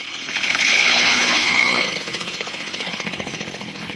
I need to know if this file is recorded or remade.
remade